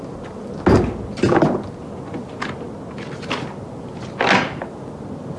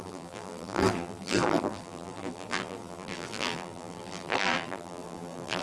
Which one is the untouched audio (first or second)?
first